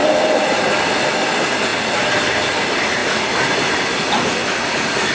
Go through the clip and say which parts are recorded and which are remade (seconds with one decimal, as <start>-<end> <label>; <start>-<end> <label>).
0.0-0.6 remade; 0.6-5.1 recorded